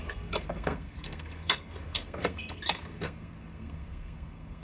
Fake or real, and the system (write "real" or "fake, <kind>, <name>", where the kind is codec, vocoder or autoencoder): fake, codec, SNAC